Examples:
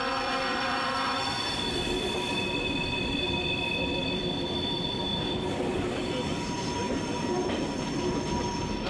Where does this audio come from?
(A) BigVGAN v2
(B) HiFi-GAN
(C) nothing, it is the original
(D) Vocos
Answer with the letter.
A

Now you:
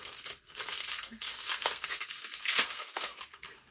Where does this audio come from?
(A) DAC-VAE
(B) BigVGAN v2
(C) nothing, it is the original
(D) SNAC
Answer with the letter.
D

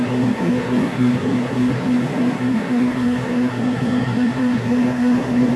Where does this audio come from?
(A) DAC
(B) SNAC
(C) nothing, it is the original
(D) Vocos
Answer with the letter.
B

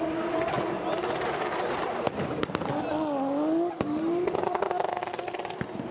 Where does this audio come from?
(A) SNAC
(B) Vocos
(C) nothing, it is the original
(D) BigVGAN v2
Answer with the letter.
C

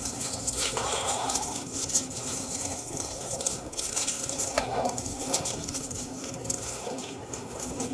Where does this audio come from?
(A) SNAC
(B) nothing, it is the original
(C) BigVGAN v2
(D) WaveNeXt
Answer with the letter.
A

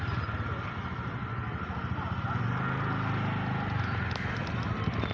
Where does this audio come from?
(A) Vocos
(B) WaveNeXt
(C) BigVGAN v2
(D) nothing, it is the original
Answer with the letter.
D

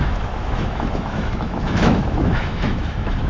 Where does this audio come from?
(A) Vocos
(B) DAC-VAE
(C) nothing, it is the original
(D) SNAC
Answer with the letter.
B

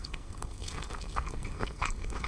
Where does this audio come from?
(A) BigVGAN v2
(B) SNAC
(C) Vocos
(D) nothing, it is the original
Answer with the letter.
B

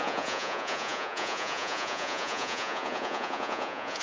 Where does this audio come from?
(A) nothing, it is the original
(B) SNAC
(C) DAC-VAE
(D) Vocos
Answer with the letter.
D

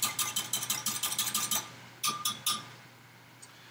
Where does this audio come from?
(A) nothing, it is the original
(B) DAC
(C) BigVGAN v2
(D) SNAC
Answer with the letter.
A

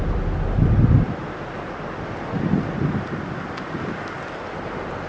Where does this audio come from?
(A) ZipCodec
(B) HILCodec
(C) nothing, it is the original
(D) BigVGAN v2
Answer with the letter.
C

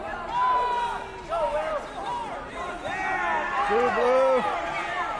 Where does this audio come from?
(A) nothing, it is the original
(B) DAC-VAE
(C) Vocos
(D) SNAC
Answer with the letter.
A